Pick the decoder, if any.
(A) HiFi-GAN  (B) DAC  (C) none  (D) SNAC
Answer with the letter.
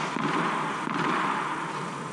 C